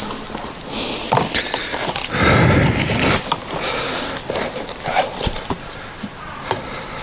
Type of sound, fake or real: real